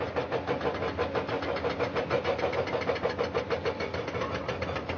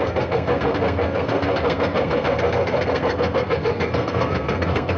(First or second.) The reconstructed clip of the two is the second